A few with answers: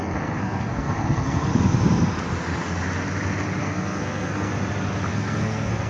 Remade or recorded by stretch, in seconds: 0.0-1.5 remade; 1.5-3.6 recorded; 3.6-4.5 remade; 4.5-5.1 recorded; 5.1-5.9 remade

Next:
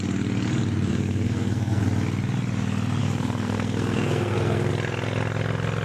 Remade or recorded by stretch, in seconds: 0.0-0.9 recorded; 0.9-1.8 remade; 1.8-3.0 recorded; 3.0-4.7 remade; 4.7-5.8 recorded

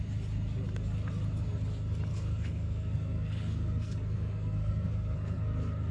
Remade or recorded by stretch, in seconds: 0.0-2.1 recorded; 2.1-5.9 remade

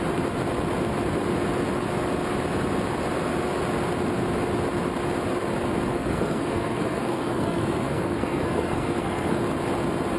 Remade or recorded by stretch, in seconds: 0.0-5.9 recorded; 5.9-9.4 remade; 9.4-10.2 recorded

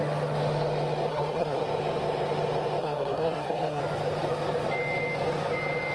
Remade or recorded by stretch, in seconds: 0.0-1.1 recorded; 1.1-1.6 remade; 1.6-2.8 recorded; 2.8-3.8 remade; 3.8-5.9 recorded